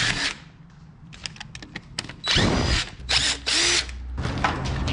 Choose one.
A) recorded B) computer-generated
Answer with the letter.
A